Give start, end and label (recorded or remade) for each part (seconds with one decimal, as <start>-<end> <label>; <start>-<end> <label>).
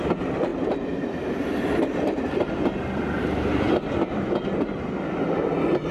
0.0-5.9 recorded